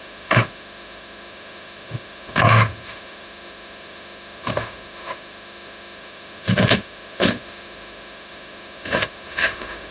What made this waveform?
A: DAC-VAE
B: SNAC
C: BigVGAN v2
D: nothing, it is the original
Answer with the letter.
A